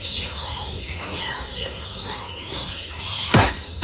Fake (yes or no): yes